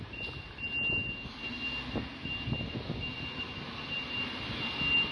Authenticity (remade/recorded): recorded